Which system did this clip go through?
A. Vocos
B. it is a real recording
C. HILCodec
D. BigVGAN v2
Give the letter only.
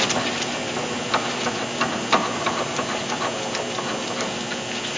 B